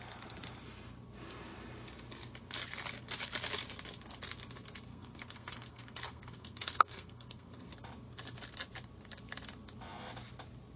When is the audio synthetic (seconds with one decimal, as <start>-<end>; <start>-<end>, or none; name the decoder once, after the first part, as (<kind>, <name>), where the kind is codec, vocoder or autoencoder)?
4.9-7.7 (codec, SNAC)